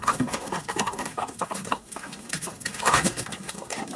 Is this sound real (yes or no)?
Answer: no